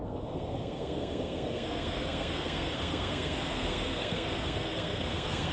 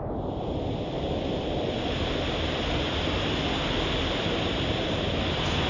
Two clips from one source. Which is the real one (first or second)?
second